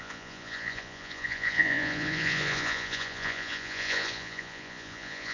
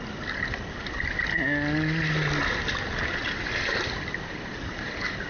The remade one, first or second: first